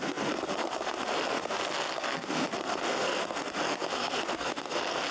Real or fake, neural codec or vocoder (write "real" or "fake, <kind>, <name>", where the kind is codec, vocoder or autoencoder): fake, codec, SNAC